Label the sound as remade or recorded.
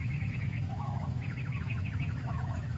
remade